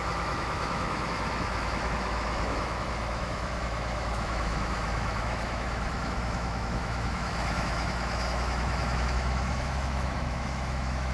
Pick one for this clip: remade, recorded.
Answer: remade